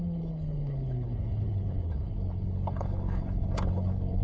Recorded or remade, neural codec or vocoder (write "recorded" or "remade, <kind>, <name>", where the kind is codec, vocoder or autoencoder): remade, codec, HILCodec